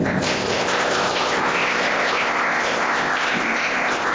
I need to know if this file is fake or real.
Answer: fake